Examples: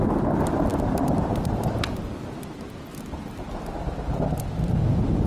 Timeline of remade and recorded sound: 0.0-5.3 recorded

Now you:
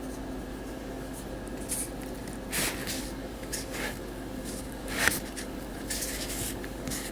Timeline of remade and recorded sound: 0.0-0.5 recorded; 0.5-1.2 remade; 1.2-2.8 recorded; 2.8-7.1 remade